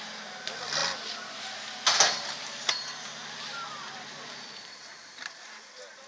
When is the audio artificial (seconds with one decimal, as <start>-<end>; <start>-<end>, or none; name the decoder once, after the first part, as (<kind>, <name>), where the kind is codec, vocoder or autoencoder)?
none